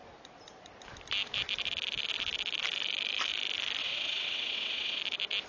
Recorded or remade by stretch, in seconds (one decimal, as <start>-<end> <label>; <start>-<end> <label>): 0.0-3.8 recorded; 3.8-5.0 remade; 5.0-5.5 recorded